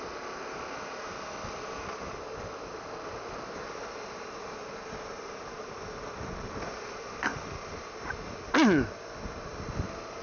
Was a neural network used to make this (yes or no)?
no